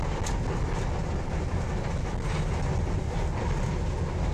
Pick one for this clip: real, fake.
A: real